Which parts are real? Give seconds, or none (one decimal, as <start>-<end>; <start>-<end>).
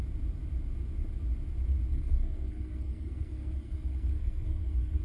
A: 0.0-1.9